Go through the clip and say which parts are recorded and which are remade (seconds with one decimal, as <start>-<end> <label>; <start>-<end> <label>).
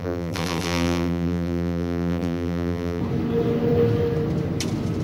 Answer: 0.0-3.0 remade; 3.0-5.0 recorded